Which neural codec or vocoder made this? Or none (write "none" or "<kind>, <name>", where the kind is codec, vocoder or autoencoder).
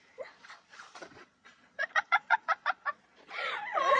vocoder, Vocos